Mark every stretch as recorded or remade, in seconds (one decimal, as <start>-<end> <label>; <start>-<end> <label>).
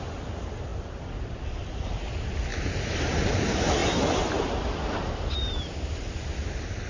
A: 0.0-2.5 recorded; 2.5-3.0 remade; 3.0-6.9 recorded